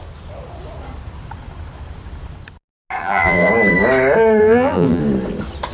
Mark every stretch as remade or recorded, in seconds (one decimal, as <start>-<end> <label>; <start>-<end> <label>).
0.0-3.0 recorded; 3.0-3.5 remade; 3.5-4.4 recorded; 4.4-5.0 remade; 5.0-5.7 recorded